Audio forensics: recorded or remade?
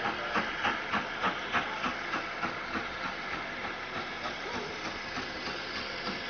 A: recorded